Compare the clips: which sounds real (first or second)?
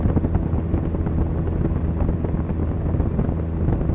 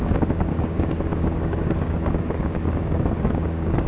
first